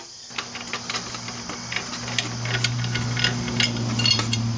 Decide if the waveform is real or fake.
real